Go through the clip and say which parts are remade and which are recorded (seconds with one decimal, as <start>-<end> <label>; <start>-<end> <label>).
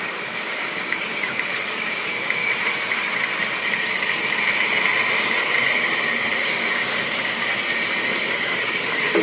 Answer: 0.0-2.4 remade; 2.4-5.8 recorded; 5.8-7.4 remade; 7.4-8.4 recorded; 8.4-9.2 remade